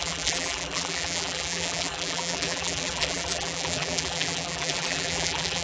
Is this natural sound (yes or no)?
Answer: no